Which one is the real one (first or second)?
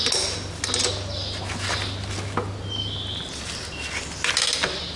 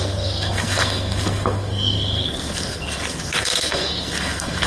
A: first